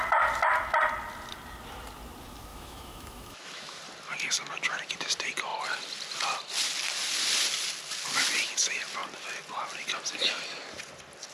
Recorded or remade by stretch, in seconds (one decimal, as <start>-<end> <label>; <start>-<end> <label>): 0.0-2.5 recorded; 2.5-3.8 remade; 3.8-11.3 recorded